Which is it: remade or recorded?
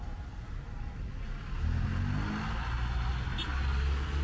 recorded